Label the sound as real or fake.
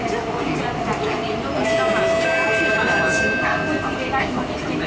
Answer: real